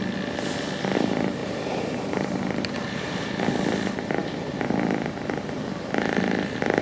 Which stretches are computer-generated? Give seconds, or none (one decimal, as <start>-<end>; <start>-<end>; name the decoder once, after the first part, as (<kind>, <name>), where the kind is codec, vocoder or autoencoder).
1.4-3.5 (vocoder, BigVGAN v2)